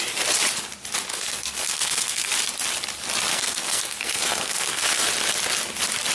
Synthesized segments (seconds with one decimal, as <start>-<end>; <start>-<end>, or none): 1.1-2.3; 3.3-5.1